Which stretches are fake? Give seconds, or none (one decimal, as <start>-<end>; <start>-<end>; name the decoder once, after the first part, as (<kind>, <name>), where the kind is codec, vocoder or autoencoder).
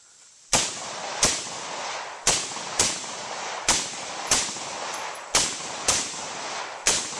5.8-6.6 (vocoder, BigVGAN v2)